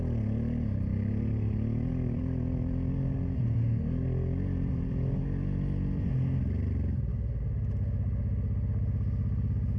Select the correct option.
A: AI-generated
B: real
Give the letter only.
B